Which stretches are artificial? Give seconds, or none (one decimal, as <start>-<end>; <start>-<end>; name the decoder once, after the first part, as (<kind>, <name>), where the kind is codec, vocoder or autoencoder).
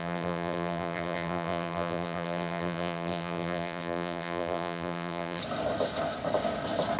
0.0-5.4 (vocoder, BigVGAN v2)